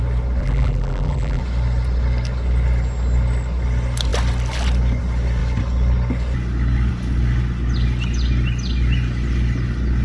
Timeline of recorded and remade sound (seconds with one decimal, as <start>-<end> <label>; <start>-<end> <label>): 0.0-0.4 recorded; 0.4-1.4 remade; 1.4-10.0 recorded